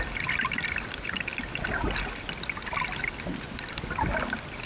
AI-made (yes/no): no